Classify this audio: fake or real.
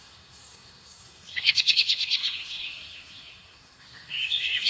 fake